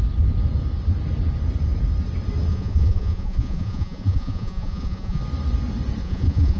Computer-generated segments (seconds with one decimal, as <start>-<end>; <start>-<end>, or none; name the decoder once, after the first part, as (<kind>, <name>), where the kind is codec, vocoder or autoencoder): 2.5-5.2 (vocoder, Vocos); 6.0-6.6